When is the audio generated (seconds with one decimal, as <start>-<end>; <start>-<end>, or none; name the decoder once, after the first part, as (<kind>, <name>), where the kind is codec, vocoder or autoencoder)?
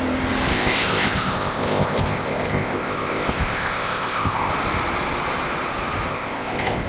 0.5-4.5 (codec, ZipCodec); 6.1-6.9